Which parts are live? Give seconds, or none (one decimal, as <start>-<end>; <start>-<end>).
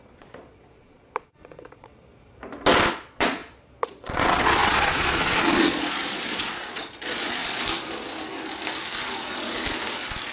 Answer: 1.9-2.9; 7.4-10.3